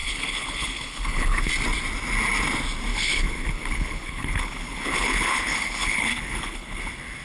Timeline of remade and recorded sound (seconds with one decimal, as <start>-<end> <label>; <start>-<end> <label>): 0.0-1.5 remade; 1.5-2.9 recorded; 2.9-6.8 remade; 6.8-7.2 recorded